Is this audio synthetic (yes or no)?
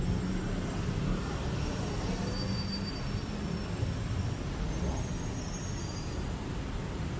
no